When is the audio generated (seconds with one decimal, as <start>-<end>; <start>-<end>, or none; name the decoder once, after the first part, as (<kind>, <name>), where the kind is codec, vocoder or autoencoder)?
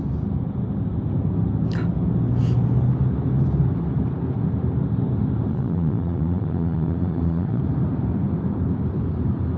5.5-7.6 (vocoder, Vocos)